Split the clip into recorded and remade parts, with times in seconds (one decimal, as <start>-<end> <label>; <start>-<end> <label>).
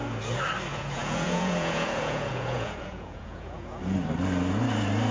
0.0-0.7 recorded; 0.7-3.8 remade; 3.8-5.1 recorded